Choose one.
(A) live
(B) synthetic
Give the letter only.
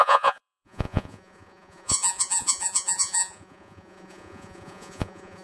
B